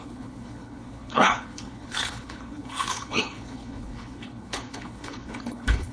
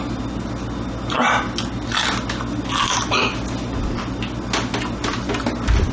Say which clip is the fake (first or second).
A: first